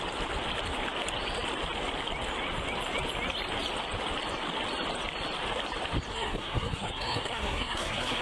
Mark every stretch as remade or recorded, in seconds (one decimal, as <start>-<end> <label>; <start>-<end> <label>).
0.0-6.1 recorded; 6.1-8.2 remade